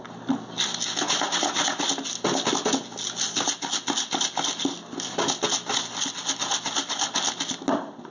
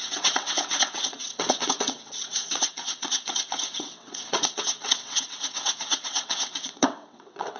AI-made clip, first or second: second